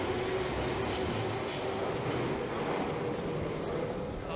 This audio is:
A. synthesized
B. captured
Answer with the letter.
B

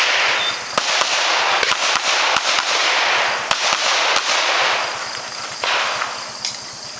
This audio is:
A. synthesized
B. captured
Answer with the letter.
B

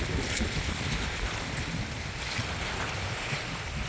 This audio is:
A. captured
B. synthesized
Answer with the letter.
A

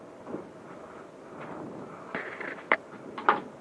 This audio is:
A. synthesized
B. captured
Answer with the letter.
B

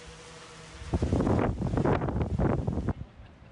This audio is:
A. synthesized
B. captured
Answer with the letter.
B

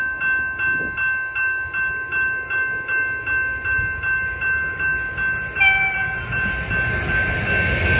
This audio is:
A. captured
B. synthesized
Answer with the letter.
A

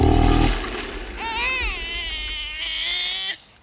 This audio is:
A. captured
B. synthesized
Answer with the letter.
A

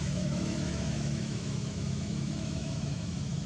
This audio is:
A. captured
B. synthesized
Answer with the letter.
B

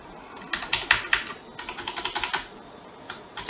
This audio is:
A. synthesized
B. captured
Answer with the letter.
B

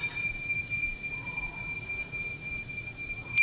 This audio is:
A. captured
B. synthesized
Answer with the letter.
B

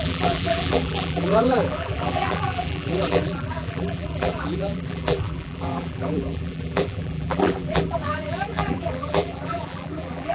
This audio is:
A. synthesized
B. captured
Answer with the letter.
A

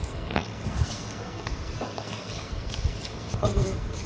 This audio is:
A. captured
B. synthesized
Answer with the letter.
B